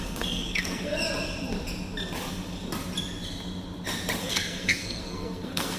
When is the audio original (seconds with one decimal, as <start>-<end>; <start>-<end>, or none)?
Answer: 1.0-4.2